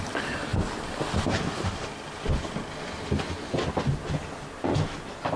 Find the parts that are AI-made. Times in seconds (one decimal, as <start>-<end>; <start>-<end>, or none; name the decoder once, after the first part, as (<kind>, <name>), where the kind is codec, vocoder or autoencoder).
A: none